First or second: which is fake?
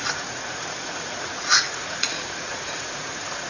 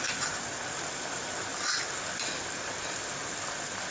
first